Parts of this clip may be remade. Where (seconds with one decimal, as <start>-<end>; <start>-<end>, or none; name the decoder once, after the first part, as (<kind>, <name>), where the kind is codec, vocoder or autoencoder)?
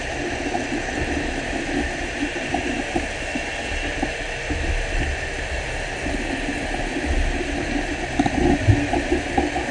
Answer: none